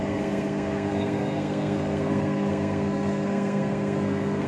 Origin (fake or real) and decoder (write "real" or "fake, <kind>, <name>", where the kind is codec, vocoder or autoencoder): fake, codec, SNAC